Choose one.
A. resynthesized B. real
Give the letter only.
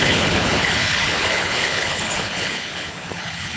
A